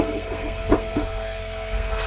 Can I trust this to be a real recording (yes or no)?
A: no